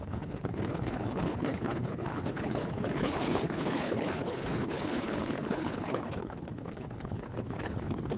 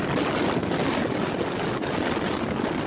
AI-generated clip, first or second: first